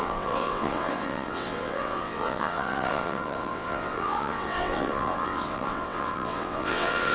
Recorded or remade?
remade